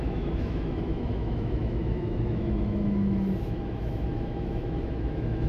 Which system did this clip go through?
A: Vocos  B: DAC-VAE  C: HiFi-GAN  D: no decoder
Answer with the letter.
B